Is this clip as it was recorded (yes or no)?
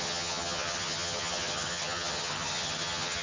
no